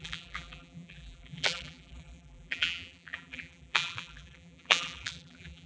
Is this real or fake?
fake